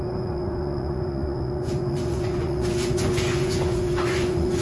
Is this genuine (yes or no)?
no